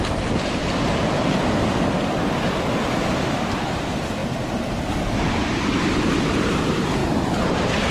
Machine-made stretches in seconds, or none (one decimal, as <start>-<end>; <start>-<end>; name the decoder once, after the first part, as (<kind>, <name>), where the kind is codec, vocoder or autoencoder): 0.0-0.6 (vocoder, BigVGAN v2); 3.5-7.0; 7.5-7.9